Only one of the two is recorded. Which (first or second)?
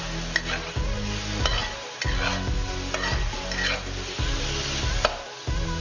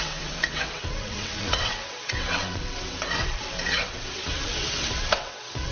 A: first